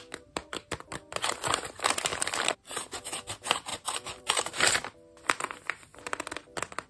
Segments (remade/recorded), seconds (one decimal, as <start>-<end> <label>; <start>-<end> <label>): 0.0-2.1 recorded; 2.1-3.0 remade; 3.0-3.7 recorded; 3.7-4.7 remade; 4.7-6.9 recorded